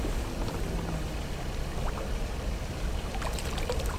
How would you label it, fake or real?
real